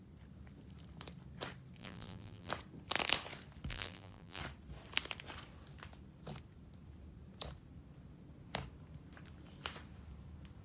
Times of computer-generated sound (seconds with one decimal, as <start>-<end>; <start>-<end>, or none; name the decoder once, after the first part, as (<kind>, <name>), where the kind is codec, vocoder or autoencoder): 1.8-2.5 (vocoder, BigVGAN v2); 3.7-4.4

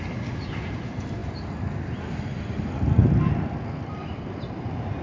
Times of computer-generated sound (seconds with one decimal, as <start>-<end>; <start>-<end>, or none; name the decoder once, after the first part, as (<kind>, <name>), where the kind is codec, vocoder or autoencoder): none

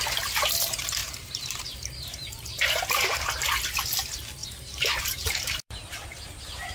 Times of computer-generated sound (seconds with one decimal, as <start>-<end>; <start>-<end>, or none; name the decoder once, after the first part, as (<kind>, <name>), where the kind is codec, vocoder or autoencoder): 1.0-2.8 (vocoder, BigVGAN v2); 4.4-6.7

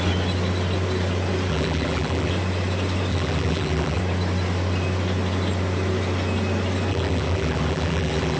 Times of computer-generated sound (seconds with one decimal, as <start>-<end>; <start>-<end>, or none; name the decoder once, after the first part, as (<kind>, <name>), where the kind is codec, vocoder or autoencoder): 1.5-2.3 (vocoder, BigVGAN v2); 3.1-4.0; 6.9-8.4

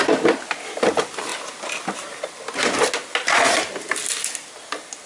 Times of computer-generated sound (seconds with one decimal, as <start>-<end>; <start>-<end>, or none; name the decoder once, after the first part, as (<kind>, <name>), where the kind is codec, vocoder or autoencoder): none